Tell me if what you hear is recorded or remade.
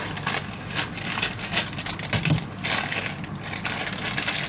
recorded